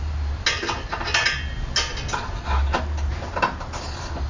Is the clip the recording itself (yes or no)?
yes